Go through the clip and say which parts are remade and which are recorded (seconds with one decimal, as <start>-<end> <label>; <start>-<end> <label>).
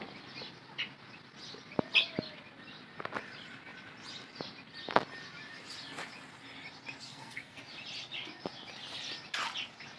0.0-7.0 recorded; 7.0-7.6 remade; 7.6-10.0 recorded